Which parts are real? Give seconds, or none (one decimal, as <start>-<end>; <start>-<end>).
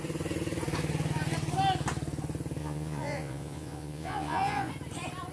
0.0-2.6; 4.7-5.3